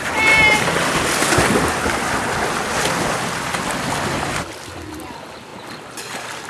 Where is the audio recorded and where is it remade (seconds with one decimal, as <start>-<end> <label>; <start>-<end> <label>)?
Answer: 0.0-6.5 recorded